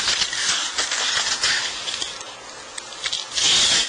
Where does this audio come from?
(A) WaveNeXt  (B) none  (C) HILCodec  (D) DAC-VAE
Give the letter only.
B